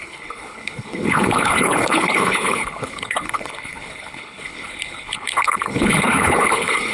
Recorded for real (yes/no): no